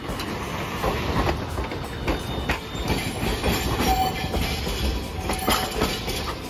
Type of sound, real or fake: real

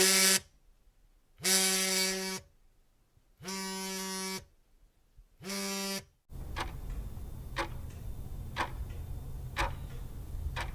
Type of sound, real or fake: real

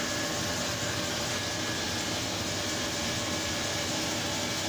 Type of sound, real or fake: real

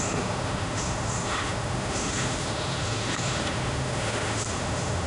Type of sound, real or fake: fake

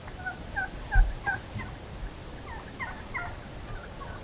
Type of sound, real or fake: real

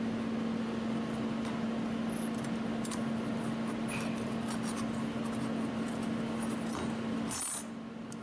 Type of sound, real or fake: real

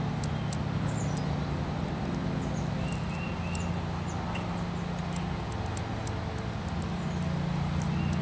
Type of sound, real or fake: real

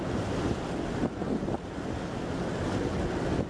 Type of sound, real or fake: real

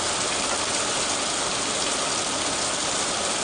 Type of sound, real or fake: real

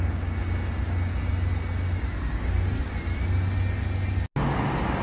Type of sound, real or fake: real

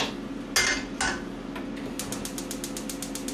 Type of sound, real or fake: real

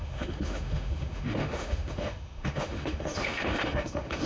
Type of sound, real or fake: fake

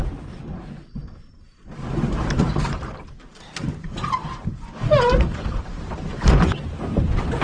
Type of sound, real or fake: fake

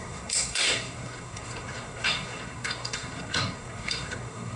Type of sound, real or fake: fake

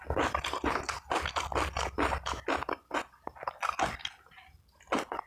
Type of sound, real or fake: real